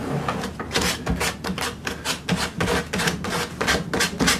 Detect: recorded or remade recorded